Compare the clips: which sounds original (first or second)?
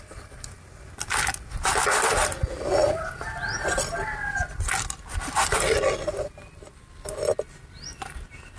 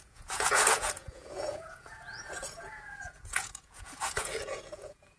first